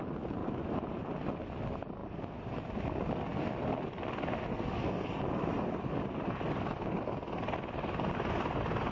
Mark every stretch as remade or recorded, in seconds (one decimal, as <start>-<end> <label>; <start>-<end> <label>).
0.0-0.4 recorded; 0.4-1.0 remade; 1.0-2.0 recorded; 2.0-2.6 remade; 2.6-8.9 recorded